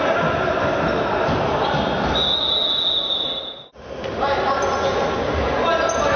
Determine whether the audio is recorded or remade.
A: recorded